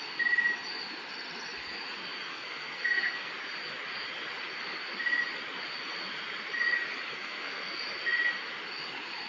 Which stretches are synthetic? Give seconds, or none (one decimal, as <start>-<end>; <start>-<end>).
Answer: 2.3-3.3; 7.1-7.8